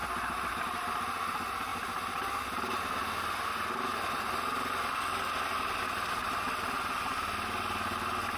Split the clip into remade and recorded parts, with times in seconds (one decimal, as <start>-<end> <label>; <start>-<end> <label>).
0.0-8.4 recorded